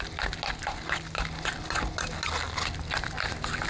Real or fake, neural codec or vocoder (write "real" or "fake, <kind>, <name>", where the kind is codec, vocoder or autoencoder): real